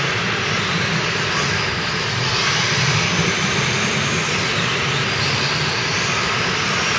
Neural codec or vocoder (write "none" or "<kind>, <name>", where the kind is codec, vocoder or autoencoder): none